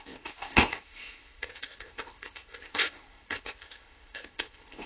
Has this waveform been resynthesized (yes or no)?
yes